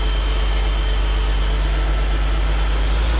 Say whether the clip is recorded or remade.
recorded